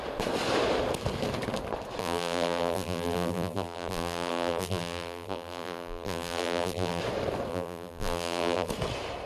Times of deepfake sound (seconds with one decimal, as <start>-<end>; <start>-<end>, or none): 2.0-7.0; 7.5-8.7